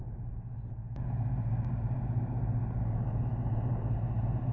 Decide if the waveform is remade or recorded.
recorded